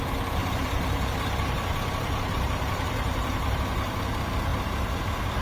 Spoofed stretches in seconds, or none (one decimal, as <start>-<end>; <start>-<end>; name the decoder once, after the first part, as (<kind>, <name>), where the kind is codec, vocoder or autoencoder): 0.4-3.6 (vocoder, BigVGAN v2)